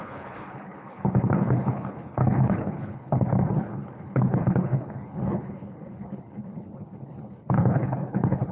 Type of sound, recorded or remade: remade